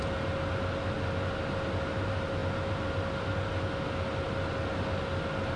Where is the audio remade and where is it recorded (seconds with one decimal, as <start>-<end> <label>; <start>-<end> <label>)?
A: 0.0-5.6 recorded